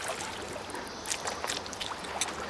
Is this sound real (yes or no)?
yes